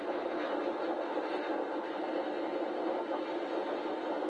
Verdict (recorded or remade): recorded